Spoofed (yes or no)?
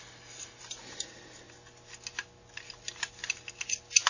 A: no